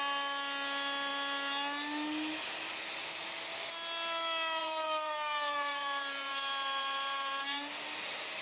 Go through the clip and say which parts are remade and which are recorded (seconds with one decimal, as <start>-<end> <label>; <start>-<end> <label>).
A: 0.0-4.6 recorded; 4.6-8.4 remade